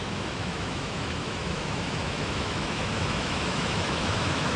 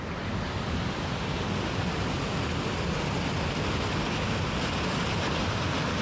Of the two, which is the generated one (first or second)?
first